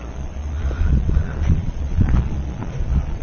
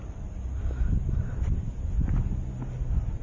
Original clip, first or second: second